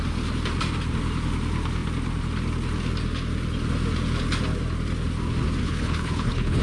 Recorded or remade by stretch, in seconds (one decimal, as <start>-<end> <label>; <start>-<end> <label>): 0.0-5.6 recorded; 5.6-6.6 remade